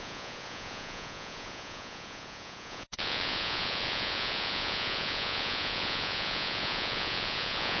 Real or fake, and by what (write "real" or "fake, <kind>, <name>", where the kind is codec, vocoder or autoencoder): fake, vocoder, Vocos